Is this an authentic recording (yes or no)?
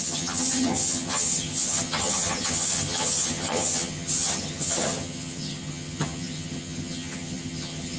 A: no